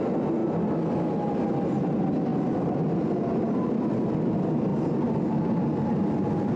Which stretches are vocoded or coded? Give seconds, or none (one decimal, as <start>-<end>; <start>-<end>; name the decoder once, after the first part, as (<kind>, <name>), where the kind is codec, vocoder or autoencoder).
none